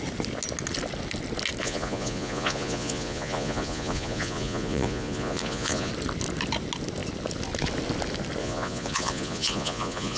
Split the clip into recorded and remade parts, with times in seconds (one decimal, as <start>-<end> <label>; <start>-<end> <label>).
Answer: 0.0-1.6 recorded; 1.6-5.9 remade; 5.9-8.4 recorded; 8.4-10.2 remade